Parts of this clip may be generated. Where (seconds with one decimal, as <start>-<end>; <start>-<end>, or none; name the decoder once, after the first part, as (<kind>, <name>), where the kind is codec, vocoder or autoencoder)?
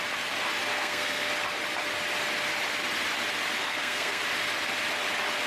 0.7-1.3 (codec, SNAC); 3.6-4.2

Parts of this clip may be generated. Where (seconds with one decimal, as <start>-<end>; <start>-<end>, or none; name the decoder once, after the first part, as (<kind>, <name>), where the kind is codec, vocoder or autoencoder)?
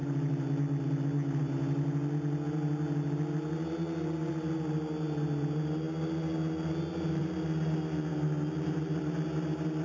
none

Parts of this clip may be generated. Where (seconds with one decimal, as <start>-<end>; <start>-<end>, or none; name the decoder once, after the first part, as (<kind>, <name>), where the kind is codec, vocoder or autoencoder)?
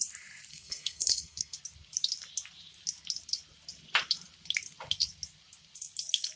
0.5-1.6 (codec, SNAC)